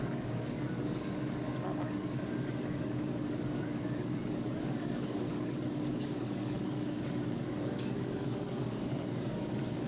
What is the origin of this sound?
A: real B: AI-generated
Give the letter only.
B